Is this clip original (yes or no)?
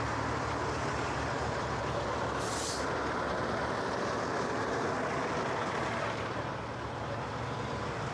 yes